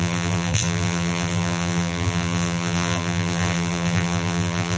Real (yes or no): no